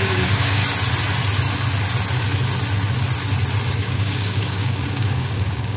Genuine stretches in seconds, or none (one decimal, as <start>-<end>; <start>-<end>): 0.6-3.7